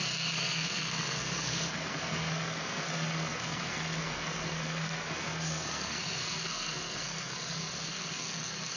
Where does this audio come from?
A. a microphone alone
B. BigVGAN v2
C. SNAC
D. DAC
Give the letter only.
C